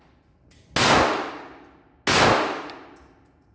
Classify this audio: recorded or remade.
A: recorded